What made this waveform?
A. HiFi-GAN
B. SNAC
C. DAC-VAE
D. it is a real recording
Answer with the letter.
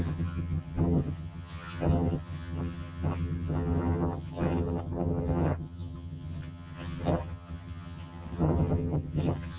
A